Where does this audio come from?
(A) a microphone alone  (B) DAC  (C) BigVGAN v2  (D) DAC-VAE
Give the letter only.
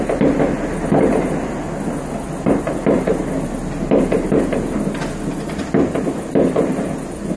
A